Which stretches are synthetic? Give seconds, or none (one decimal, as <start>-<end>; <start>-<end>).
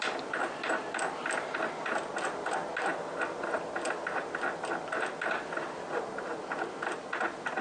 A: none